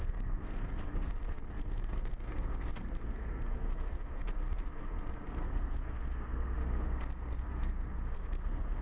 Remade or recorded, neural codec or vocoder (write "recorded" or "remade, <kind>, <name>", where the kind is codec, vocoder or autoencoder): remade, codec, SNAC